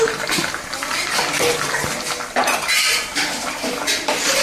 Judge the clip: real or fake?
real